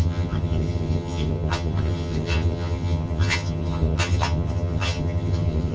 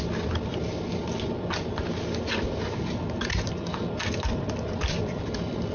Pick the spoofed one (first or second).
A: first